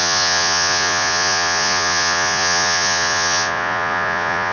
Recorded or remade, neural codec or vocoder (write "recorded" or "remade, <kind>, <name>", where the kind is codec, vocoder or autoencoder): remade, vocoder, Vocos